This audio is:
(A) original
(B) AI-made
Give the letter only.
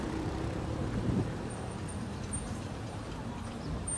B